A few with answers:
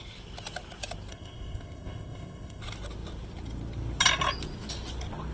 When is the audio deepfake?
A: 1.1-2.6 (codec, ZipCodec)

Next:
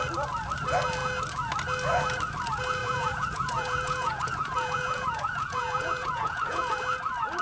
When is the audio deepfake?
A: 2.8-6.7 (vocoder, Vocos)

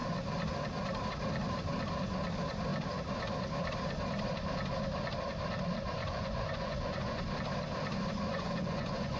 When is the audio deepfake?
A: 6.0-7.3 (vocoder, Vocos); 8.3-9.2

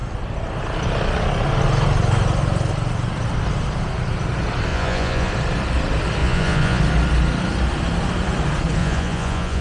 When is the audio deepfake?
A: 4.7-5.3 (vocoder, Vocos); 6.2-6.8; 8.8-9.6

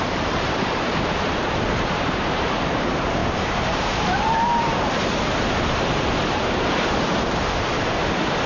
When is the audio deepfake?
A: 0.0-8.5 (vocoder, BigVGAN v2)